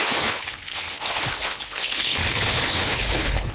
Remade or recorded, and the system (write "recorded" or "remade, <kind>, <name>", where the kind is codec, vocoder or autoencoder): remade, codec, HILCodec